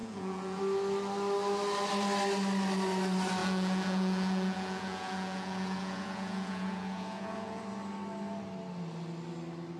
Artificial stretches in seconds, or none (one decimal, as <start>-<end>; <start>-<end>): 0.0-0.6; 3.4-7.6